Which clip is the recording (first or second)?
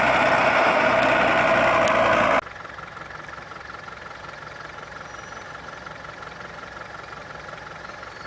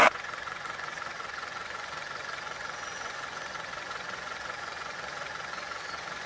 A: first